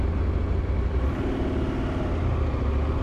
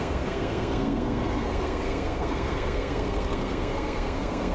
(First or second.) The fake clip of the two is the second